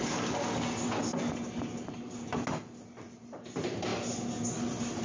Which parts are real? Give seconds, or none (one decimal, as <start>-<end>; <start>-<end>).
0.0-5.0